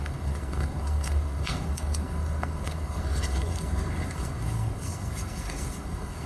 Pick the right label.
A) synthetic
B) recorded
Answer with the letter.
A